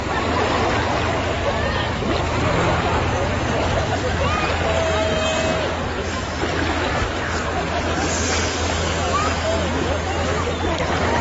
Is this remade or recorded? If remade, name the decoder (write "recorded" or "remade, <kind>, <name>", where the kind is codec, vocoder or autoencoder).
recorded